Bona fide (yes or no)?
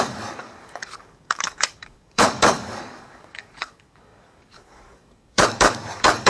no